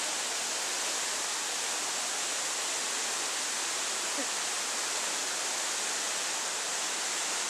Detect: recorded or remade recorded